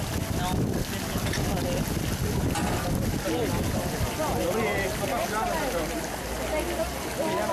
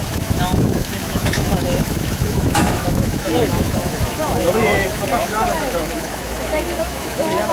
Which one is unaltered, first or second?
first